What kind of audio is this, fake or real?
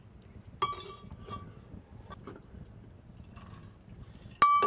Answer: real